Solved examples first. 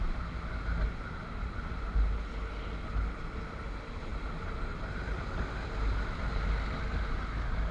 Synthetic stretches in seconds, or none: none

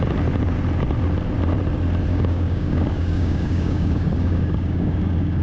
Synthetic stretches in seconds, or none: 2.1-5.4 (codec, DAC)